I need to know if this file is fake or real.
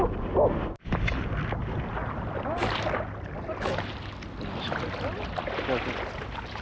real